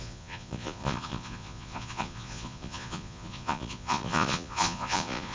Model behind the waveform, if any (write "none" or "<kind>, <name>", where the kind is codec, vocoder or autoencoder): vocoder, Vocos